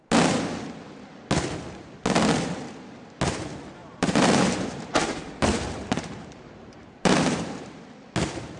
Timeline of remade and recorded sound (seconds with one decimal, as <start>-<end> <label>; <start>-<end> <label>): 0.0-3.8 recorded; 3.8-7.8 remade; 7.8-8.6 recorded